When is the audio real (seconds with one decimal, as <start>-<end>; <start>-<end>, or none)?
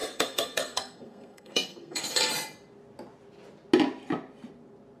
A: 2.3-5.0